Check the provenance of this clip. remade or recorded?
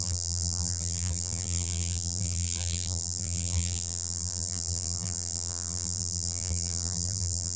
remade